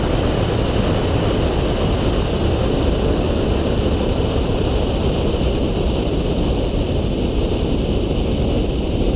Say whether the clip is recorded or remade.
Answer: recorded